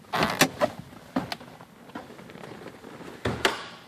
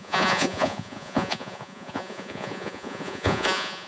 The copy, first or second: second